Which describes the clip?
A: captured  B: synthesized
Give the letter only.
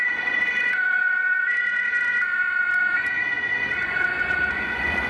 B